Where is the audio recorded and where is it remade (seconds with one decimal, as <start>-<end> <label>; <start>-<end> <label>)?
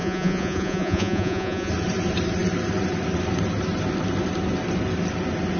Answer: 0.0-1.7 remade; 1.7-5.6 recorded